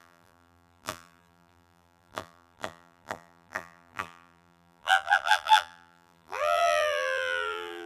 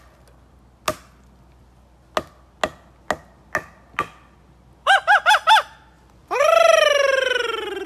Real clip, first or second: second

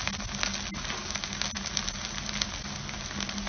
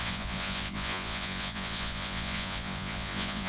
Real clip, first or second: first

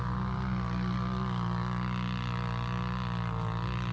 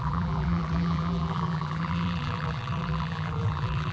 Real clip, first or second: first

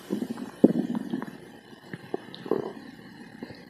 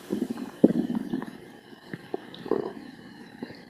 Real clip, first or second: first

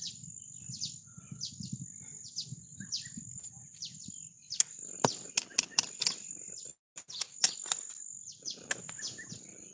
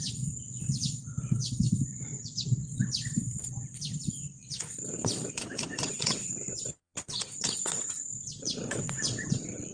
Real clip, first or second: first